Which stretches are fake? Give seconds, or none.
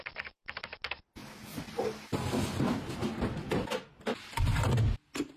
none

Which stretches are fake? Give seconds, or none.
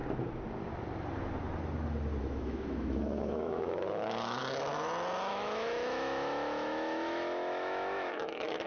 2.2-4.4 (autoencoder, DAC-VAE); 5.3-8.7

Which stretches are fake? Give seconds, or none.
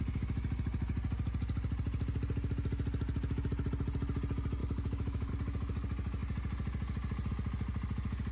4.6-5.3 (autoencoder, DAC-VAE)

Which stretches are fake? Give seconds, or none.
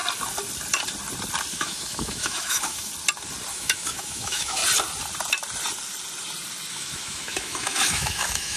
1.5-2.9 (autoencoder, DAC-VAE); 3.5-4.6; 6.7-8.6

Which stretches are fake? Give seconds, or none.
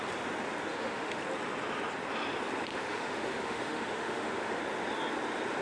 0.7-1.2 (autoencoder, DAC-VAE); 2.7-4.6